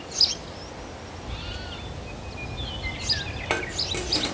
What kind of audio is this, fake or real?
real